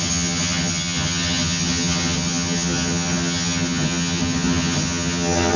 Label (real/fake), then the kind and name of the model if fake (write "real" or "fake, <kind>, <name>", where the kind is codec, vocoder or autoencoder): fake, vocoder, HiFi-GAN